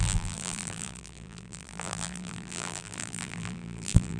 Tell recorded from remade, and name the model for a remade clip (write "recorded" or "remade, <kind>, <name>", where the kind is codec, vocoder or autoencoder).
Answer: remade, vocoder, BigVGAN v2